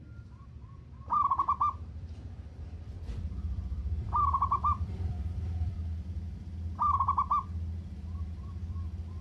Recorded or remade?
remade